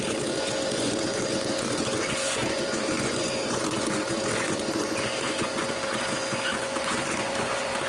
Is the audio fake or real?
fake